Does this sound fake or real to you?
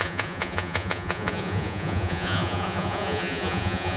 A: fake